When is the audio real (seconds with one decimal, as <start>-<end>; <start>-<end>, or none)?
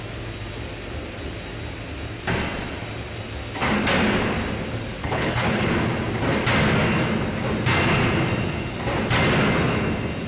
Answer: 0.0-5.0; 5.7-10.3